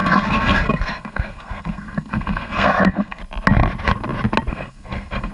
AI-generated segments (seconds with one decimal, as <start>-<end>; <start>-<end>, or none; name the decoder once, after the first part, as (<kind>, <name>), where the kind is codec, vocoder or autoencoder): 0.0-3.2 (codec, SNAC); 4.5-5.3